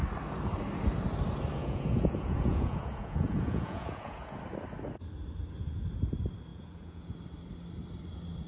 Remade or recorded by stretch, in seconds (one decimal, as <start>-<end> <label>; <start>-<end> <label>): 0.0-1.6 recorded; 1.6-4.4 remade; 4.4-6.5 recorded; 6.5-7.2 remade; 7.2-8.5 recorded